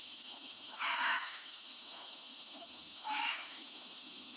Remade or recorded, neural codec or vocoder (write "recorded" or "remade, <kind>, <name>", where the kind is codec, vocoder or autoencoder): remade, autoencoder, DAC-VAE